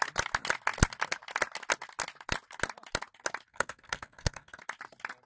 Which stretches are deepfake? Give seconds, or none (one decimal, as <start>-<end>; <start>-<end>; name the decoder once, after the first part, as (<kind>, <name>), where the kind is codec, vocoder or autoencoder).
3.5-4.6 (codec, SNAC)